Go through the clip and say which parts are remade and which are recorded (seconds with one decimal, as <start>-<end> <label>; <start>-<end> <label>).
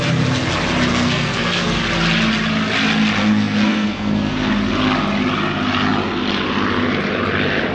0.0-0.9 recorded; 0.9-1.8 remade; 1.8-3.2 recorded; 3.2-4.5 remade; 4.5-7.7 recorded